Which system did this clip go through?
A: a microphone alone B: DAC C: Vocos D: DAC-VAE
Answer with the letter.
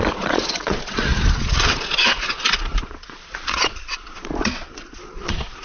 C